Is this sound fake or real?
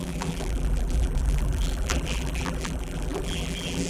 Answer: fake